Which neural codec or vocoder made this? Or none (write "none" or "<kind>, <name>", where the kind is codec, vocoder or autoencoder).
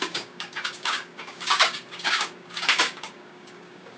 codec, DAC